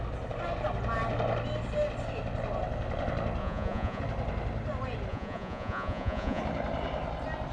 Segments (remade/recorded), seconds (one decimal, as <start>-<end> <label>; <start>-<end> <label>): 0.0-3.4 recorded; 3.4-4.0 remade; 4.0-5.1 recorded; 5.1-6.4 remade; 6.4-7.5 recorded